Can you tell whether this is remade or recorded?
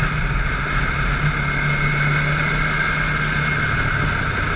recorded